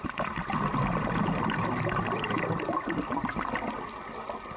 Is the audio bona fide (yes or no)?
yes